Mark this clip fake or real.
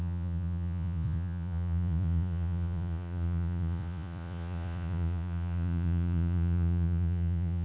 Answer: fake